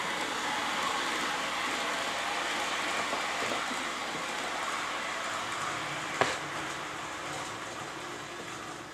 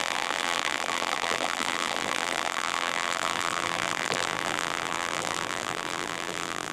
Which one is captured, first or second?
first